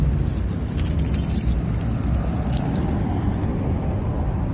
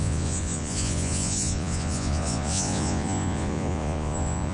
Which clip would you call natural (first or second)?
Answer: first